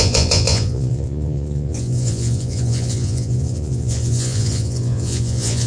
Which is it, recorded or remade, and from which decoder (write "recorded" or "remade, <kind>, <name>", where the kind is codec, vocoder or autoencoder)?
remade, vocoder, Vocos